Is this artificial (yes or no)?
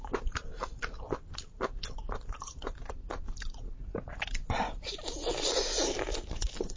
yes